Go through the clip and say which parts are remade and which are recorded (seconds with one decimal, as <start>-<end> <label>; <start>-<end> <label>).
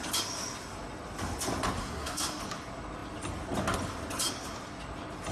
0.0-1.8 recorded; 1.8-2.4 remade; 2.4-5.3 recorded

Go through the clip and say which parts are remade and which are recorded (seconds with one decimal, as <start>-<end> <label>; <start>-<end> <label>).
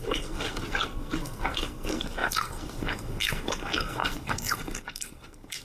0.0-5.6 remade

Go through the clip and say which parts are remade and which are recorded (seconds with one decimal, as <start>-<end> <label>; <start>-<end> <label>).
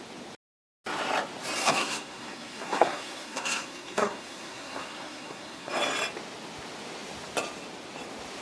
0.0-1.6 recorded; 1.6-5.7 remade; 5.7-8.4 recorded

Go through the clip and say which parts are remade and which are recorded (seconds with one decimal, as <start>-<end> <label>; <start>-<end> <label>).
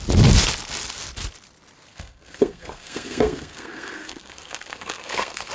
0.0-1.9 recorded; 1.9-5.5 remade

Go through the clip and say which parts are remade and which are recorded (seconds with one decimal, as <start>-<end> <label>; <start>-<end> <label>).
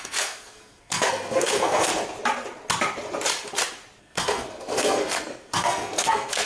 0.0-1.9 remade; 1.9-4.0 recorded; 4.0-6.5 remade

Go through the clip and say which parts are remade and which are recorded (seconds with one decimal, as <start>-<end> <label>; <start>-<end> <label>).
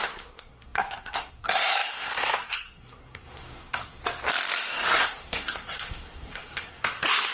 0.0-4.0 remade; 4.0-5.0 recorded; 5.0-7.3 remade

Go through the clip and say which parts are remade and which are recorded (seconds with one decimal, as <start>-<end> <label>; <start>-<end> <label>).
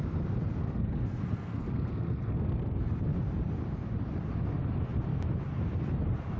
0.0-0.6 recorded; 0.6-2.9 remade; 2.9-6.4 recorded